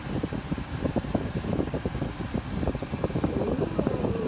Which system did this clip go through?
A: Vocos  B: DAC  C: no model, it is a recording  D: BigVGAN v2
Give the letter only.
D